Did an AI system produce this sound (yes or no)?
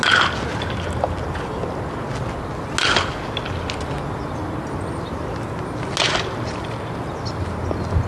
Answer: no